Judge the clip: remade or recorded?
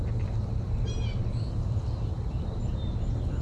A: recorded